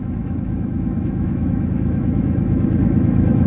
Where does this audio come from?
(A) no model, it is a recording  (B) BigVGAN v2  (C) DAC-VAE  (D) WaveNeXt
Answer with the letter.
C